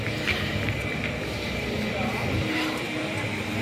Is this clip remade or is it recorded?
remade